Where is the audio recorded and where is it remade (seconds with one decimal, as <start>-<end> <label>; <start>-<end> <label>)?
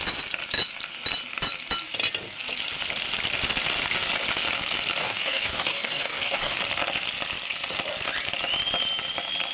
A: 0.0-5.0 recorded; 5.0-6.6 remade; 6.6-9.5 recorded